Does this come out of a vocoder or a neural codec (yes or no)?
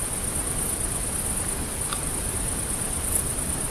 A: no